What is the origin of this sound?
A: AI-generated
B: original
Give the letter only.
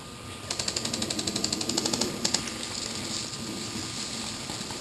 B